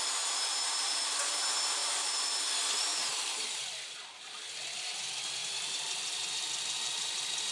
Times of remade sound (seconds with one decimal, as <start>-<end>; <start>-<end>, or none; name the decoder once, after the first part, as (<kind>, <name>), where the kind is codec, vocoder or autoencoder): 0.5-1.1 (vocoder, BigVGAN v2); 1.8-2.5; 2.9-3.6

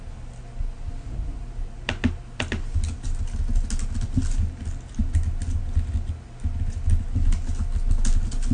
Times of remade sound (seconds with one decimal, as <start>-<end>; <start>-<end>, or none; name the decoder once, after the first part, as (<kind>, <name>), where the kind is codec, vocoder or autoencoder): none

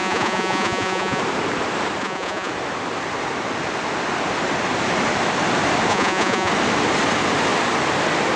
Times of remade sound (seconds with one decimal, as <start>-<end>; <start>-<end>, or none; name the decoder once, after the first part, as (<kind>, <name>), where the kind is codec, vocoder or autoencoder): 0.0-1.2 (vocoder, Vocos); 2.0-2.5; 5.9-6.5

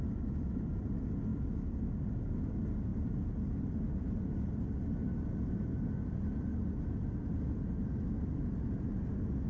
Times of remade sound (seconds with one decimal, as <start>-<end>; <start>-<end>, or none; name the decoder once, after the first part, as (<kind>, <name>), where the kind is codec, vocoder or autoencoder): 2.9-3.6 (vocoder, BigVGAN v2); 6.5-7.6

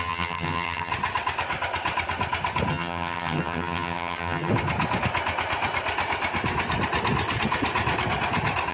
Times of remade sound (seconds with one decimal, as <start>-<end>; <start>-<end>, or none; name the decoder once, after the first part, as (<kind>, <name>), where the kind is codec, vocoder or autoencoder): 0.0-0.9 (vocoder, HiFi-GAN); 2.7-4.5